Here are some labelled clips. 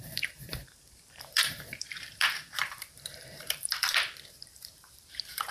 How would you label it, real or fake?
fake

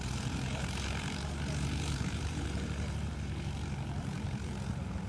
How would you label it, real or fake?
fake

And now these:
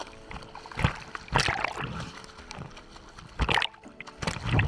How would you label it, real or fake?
real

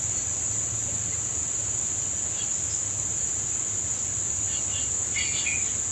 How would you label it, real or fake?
real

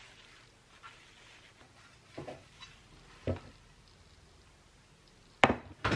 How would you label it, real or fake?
real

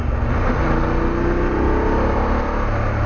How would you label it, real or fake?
real